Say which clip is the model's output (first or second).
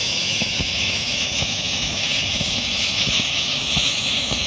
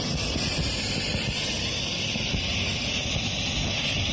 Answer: first